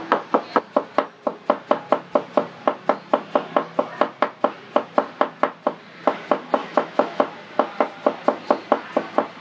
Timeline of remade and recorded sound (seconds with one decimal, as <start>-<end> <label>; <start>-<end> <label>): 0.0-6.6 recorded; 6.6-7.2 remade; 7.2-9.4 recorded